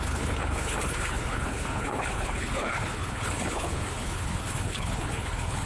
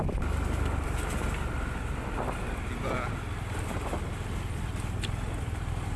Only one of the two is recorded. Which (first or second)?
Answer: second